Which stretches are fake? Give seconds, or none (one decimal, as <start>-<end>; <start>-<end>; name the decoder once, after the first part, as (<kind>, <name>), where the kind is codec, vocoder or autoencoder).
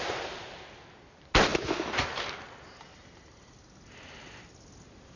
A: none